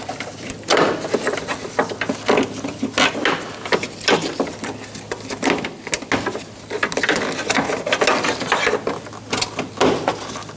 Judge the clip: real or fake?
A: real